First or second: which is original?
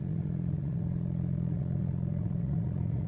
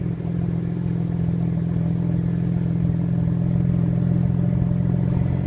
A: second